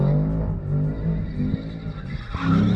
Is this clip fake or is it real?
real